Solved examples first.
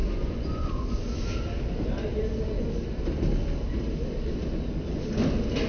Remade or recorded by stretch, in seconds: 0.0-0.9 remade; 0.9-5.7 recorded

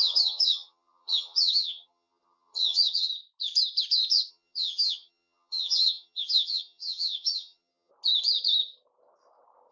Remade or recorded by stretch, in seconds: 0.0-3.1 remade; 3.1-4.3 recorded; 4.3-7.9 remade; 7.9-9.7 recorded

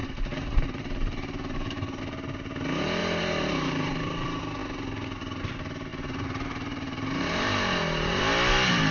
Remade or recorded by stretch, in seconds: 0.0-2.0 remade; 2.0-3.0 recorded; 3.0-4.1 remade; 4.1-5.9 recorded; 5.9-8.2 remade; 8.2-8.9 recorded

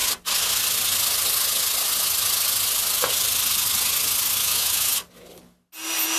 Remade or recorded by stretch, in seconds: 0.0-4.4 recorded; 4.4-4.9 remade; 4.9-6.2 recorded